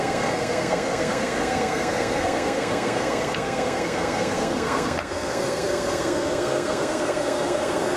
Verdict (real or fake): fake